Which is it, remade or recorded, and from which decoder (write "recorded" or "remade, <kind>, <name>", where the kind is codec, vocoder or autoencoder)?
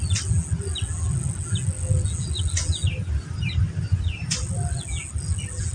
recorded